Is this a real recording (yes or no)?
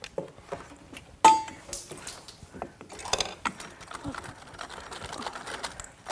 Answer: yes